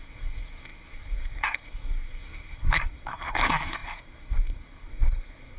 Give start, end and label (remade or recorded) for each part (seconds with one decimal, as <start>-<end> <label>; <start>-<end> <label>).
0.0-5.6 remade